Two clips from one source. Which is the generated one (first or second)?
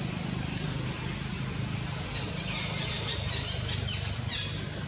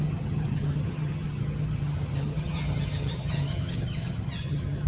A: second